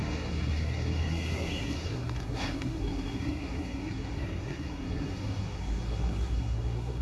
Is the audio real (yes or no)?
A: no